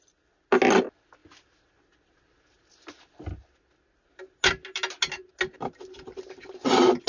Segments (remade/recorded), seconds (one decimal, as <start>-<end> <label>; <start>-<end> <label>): 0.0-7.1 recorded